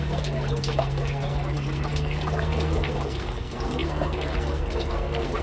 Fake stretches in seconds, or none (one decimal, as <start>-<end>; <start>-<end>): 0.0-5.4